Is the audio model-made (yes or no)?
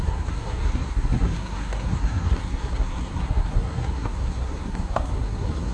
yes